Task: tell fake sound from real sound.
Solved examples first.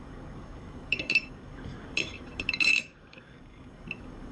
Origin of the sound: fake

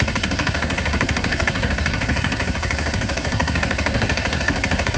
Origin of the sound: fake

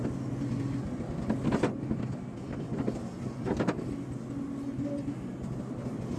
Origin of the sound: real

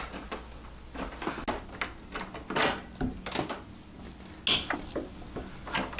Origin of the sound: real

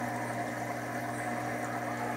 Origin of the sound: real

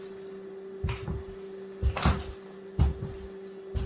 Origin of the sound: real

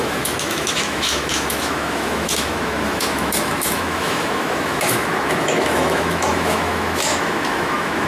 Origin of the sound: fake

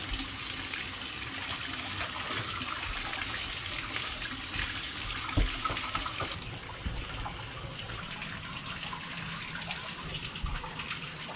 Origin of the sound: real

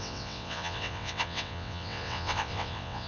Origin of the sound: fake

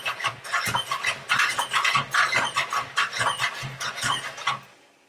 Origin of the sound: real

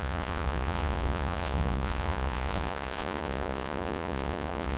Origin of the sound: fake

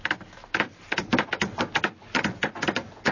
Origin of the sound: real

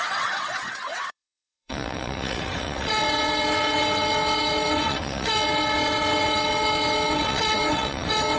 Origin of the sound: fake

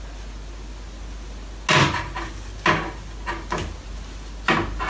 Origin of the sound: real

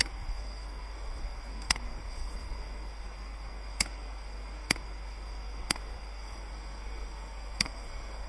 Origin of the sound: fake